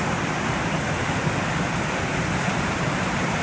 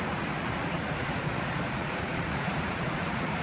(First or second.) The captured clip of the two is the first